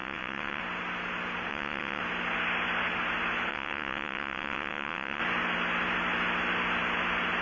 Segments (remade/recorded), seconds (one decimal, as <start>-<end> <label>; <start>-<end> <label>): 0.0-0.6 remade; 0.6-1.5 recorded; 1.5-2.0 remade; 2.0-3.5 recorded; 3.5-5.2 remade; 5.2-7.4 recorded